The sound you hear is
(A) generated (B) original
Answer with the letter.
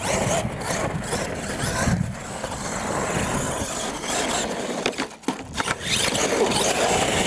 B